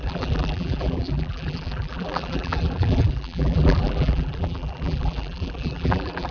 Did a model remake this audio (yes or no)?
yes